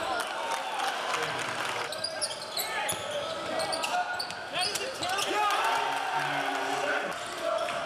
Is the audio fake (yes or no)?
no